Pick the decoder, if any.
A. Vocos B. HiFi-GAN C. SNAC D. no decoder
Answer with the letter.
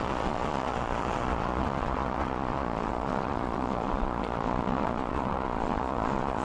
A